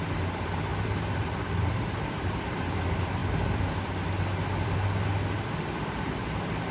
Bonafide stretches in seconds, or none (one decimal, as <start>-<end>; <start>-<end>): 3.2-4.5